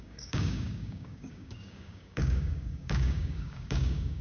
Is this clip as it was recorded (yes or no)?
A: no